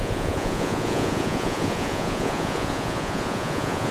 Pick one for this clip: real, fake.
fake